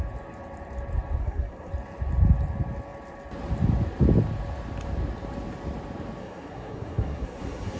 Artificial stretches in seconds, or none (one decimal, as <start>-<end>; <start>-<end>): 1.2-1.7; 6.2-7.8

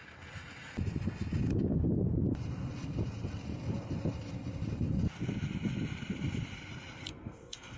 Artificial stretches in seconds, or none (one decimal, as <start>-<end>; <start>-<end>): 7.1-7.8

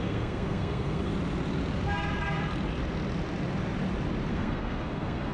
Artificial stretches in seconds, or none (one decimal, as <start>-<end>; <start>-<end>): 0.0-1.1; 4.3-5.3